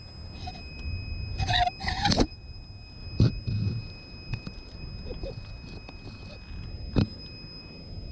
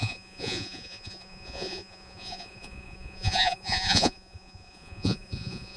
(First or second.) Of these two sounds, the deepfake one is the second